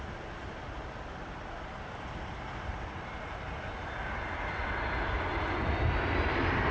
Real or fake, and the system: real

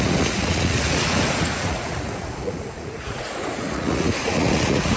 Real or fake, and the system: fake, vocoder, Vocos